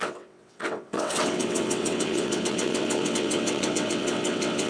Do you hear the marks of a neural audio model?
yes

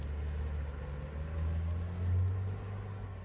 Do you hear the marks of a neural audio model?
no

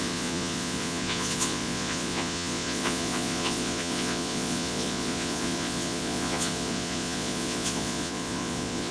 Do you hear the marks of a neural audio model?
yes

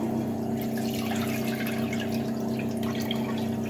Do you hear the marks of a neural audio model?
no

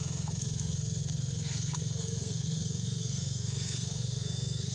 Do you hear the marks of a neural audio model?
yes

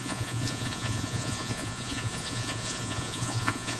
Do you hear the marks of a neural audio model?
yes